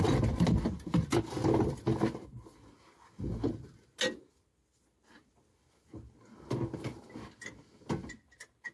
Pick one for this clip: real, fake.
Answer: real